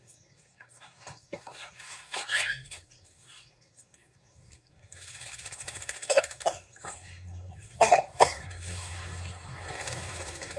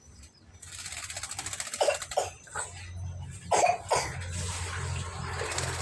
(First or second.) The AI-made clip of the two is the first